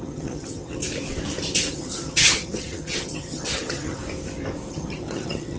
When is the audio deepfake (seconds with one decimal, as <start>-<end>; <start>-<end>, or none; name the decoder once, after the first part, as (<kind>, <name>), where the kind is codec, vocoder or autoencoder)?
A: 0.0-0.8 (vocoder, HiFi-GAN); 1.7-4.0; 4.7-5.6